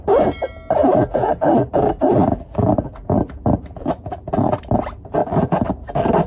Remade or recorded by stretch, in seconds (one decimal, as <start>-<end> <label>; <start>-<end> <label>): 0.0-0.8 recorded; 0.8-4.6 remade; 4.6-5.2 recorded; 5.2-5.7 remade; 5.7-6.3 recorded